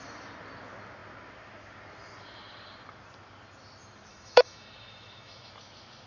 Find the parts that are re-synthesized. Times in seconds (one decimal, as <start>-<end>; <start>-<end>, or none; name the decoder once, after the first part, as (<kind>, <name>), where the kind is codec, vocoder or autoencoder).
4.1-5.5 (autoencoder, DAC-VAE)